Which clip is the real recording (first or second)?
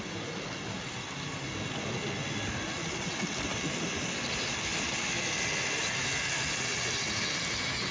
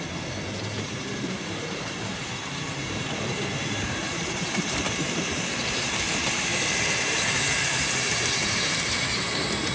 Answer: first